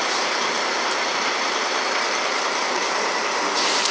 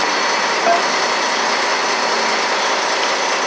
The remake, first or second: first